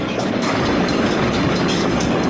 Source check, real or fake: fake